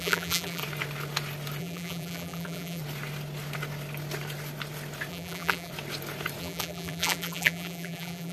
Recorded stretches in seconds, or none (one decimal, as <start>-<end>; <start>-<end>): 0.6-1.6; 2.8-5.1; 5.7-6.4